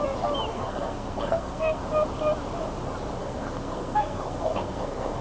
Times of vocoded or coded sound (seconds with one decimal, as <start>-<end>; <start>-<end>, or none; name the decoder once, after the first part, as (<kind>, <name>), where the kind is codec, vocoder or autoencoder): 0.5-1.8 (codec, SNAC); 3.2-5.2